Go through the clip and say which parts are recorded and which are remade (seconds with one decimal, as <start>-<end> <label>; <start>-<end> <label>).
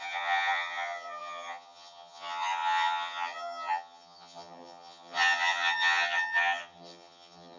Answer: 0.0-7.6 remade